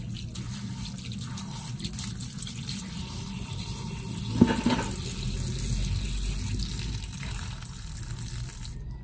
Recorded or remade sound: recorded